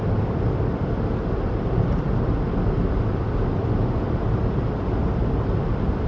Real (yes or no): yes